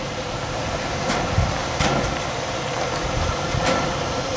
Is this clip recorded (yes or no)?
no